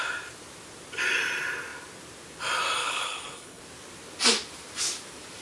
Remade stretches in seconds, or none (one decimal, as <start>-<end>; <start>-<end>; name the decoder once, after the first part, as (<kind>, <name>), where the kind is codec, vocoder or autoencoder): 2.8-3.6 (codec, HILCodec)